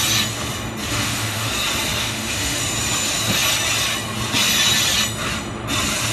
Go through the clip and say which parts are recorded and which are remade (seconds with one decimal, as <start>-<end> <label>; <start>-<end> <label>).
0.0-0.9 recorded; 0.9-1.5 remade; 1.5-2.0 recorded; 2.0-2.6 remade; 2.6-6.1 recorded